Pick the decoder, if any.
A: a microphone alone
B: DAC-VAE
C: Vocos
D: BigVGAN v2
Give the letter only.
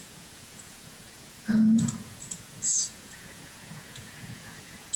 C